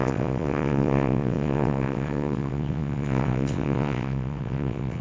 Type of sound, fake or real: fake